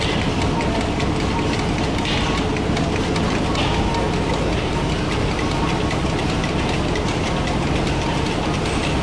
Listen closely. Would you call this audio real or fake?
real